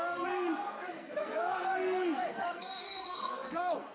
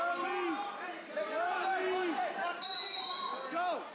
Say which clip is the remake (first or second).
first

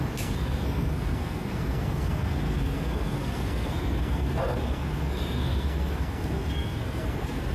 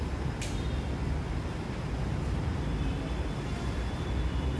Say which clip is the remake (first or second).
first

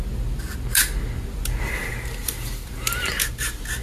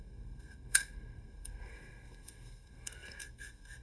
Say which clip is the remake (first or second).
second